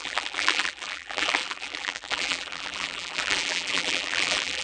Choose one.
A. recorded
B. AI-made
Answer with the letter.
B